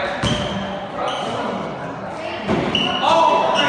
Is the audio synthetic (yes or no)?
no